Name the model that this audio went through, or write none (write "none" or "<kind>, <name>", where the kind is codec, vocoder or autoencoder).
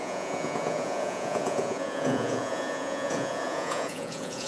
vocoder, Vocos